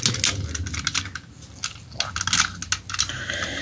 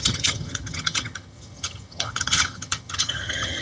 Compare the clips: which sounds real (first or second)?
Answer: first